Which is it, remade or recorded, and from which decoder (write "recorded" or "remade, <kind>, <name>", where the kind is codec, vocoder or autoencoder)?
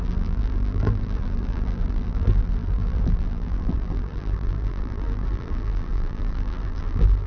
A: remade, vocoder, BigVGAN v2